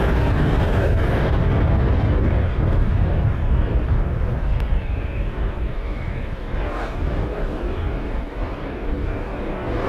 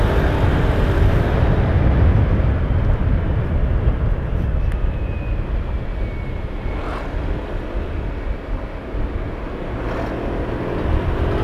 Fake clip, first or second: first